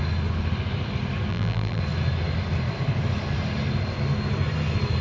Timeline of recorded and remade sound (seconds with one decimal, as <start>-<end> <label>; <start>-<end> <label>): 0.0-1.3 recorded; 1.3-1.8 remade; 1.8-5.0 recorded